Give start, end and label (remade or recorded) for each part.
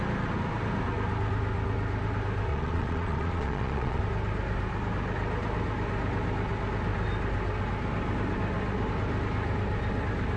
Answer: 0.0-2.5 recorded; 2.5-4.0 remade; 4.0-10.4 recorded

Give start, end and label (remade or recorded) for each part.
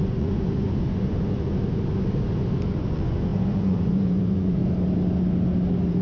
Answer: 0.0-1.5 remade; 1.5-2.8 recorded; 2.8-4.6 remade; 4.6-6.0 recorded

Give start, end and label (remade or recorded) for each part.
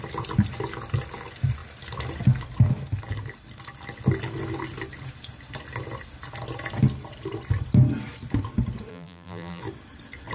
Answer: 0.0-8.9 recorded; 8.9-9.6 remade; 9.6-10.3 recorded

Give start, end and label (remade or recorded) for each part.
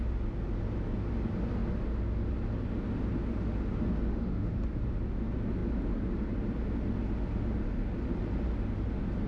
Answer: 0.0-4.1 recorded; 4.1-4.6 remade; 4.6-9.3 recorded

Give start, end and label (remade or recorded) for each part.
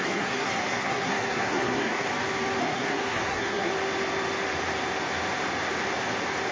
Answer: 0.0-2.1 remade; 2.1-2.6 recorded; 2.6-3.7 remade; 3.7-6.5 recorded